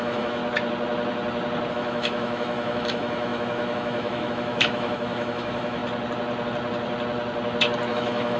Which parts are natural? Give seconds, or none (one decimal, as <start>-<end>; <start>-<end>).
0.4-1.7; 5.8-7.9